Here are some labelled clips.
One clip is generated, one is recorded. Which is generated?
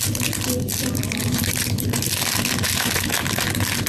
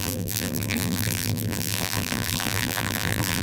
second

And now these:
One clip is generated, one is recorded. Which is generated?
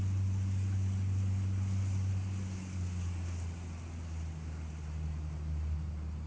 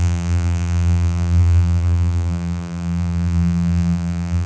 second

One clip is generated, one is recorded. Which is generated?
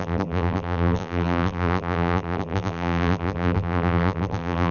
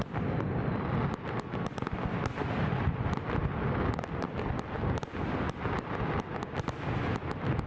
first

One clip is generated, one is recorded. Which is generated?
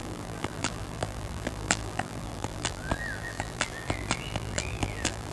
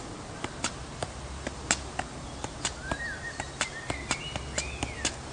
first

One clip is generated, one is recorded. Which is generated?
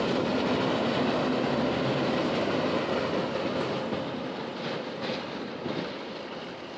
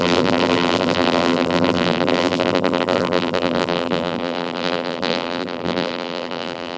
second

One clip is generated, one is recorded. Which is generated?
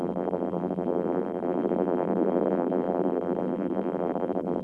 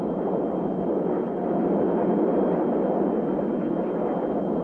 first